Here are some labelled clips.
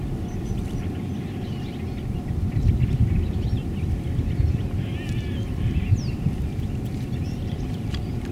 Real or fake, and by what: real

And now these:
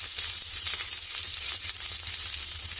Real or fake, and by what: fake, vocoder, BigVGAN v2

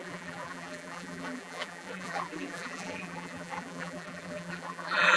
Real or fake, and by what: fake, vocoder, BigVGAN v2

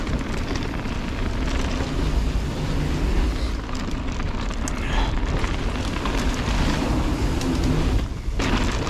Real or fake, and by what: real